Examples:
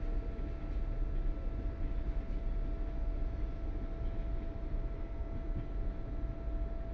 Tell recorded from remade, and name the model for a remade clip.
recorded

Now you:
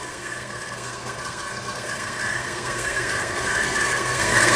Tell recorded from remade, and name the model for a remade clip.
remade, codec, SNAC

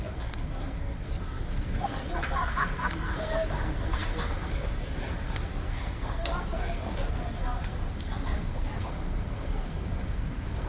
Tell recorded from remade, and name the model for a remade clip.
remade, codec, SNAC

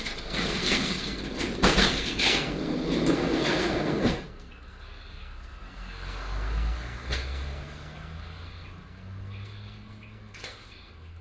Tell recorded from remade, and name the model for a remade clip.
remade, codec, SNAC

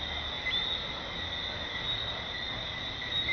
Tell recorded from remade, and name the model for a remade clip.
recorded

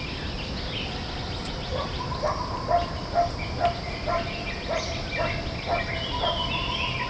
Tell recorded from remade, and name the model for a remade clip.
recorded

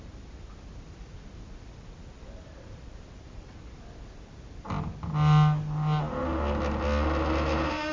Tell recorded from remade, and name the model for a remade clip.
recorded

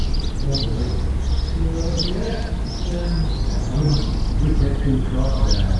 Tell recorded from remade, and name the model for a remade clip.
recorded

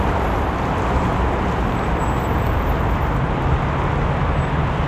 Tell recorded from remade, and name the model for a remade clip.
recorded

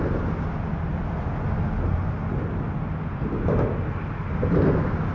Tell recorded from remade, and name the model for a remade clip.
recorded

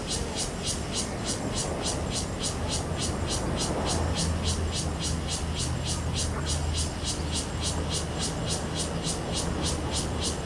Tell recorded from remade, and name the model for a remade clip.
recorded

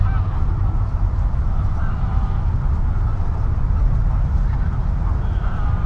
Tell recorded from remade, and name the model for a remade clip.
recorded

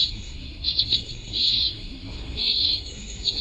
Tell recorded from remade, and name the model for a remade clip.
remade, codec, SNAC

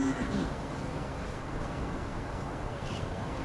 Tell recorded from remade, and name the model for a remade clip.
remade, codec, SNAC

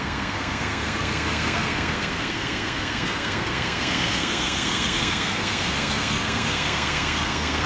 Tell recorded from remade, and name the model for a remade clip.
remade, codec, SNAC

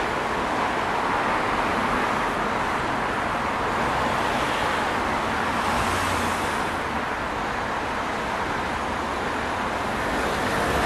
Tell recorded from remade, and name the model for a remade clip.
recorded